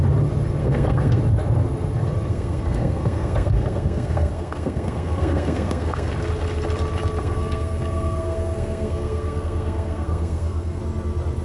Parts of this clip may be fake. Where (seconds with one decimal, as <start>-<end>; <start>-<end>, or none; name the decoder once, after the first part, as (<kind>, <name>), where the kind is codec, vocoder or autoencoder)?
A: 0.6-1.2 (codec, SNAC); 2.3-6.1; 7.2-10.8